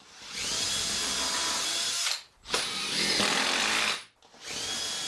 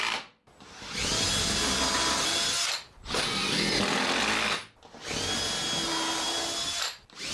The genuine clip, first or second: second